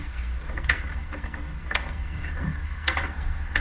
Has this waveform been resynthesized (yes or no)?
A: yes